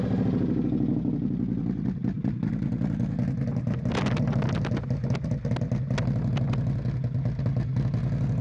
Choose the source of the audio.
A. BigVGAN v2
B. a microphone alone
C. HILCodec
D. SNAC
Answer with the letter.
B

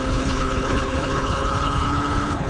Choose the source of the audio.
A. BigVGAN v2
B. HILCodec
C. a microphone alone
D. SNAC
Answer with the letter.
B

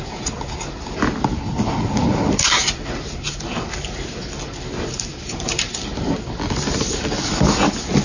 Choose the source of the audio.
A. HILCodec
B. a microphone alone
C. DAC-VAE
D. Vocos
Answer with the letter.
B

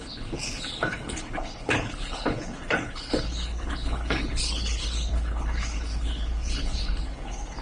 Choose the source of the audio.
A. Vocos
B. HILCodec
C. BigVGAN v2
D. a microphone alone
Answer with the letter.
B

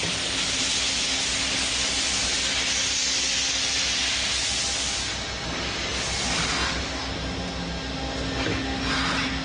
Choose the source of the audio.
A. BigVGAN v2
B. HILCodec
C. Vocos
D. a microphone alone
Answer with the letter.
D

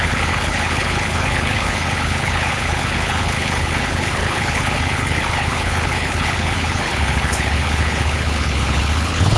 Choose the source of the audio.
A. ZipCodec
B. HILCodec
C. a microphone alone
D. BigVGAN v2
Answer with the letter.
B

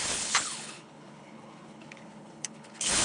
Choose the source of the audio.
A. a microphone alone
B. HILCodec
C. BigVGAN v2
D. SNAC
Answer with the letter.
B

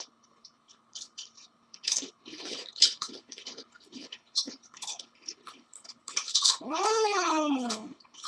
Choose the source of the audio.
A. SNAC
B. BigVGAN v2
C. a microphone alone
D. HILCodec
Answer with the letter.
D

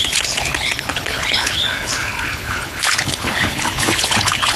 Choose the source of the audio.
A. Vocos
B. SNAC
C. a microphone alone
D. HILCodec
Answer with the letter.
D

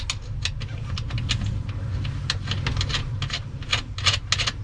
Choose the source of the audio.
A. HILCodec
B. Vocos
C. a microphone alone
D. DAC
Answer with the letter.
C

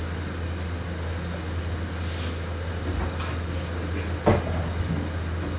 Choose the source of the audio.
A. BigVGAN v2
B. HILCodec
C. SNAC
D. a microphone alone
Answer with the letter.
D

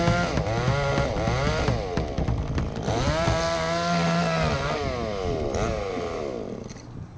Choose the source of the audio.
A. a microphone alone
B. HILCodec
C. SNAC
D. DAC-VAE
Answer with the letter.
A